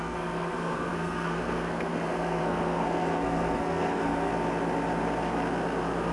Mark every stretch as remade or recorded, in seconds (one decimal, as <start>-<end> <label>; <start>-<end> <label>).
0.0-4.3 remade; 4.3-6.1 recorded